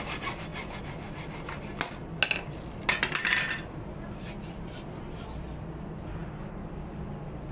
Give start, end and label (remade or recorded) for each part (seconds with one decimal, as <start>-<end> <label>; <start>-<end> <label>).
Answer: 0.0-7.5 recorded